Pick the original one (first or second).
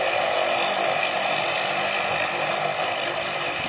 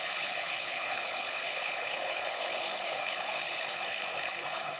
first